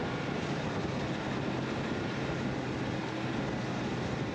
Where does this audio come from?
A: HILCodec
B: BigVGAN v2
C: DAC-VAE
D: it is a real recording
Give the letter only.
D